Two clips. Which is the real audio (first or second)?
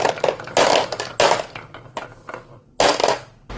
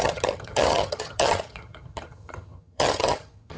first